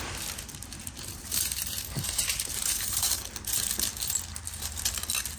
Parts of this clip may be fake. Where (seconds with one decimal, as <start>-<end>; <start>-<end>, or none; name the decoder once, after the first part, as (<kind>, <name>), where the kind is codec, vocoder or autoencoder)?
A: 0.8-3.2 (vocoder, BigVGAN v2)